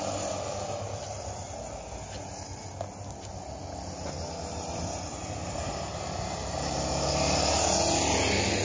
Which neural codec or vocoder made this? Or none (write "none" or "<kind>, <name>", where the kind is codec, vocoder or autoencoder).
none